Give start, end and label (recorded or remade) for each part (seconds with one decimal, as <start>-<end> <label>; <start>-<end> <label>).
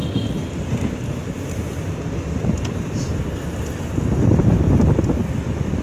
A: 0.0-5.8 recorded